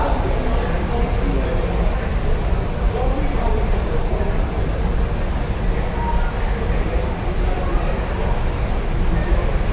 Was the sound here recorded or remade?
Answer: recorded